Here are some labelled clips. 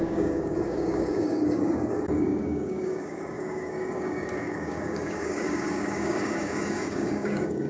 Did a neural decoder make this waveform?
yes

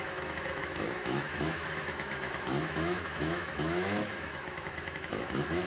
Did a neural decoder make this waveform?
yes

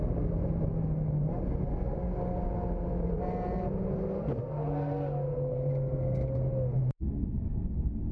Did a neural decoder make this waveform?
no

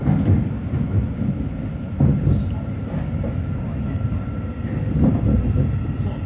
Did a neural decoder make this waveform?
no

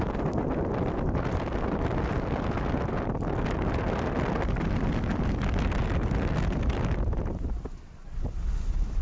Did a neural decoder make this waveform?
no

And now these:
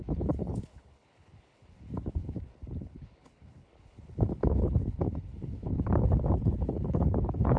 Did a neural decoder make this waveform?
yes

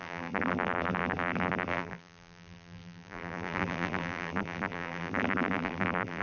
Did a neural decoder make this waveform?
yes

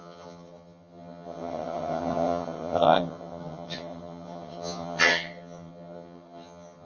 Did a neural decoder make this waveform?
yes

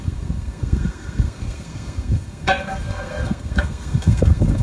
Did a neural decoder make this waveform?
yes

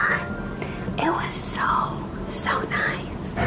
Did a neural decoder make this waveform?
no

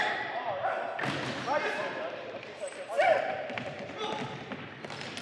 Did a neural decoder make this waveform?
yes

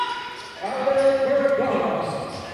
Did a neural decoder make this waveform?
no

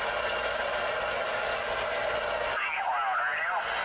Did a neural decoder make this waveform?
no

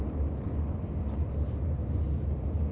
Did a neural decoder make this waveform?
no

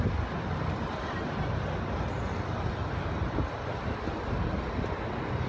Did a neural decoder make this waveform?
no